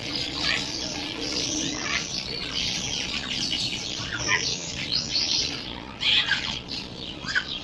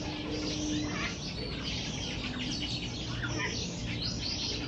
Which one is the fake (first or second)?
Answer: first